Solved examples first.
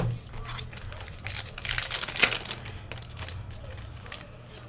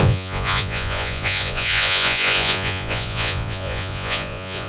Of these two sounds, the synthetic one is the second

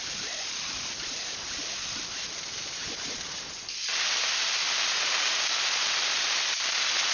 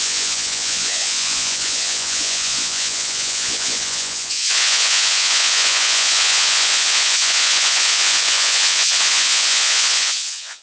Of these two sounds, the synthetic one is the second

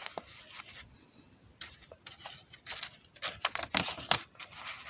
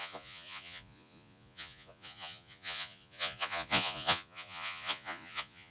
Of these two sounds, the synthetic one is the second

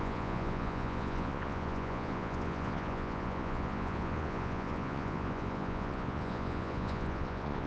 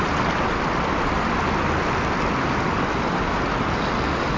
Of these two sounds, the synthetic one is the first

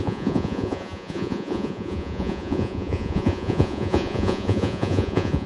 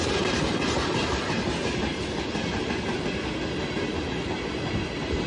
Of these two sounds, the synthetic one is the first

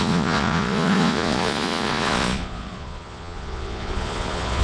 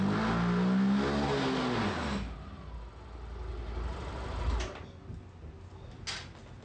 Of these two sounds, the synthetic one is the first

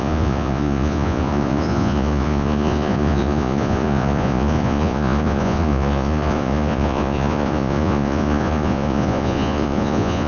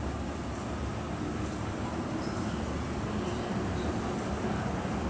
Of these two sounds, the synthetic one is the first